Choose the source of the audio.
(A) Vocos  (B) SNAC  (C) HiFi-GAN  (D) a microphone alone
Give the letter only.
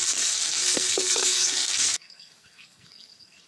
B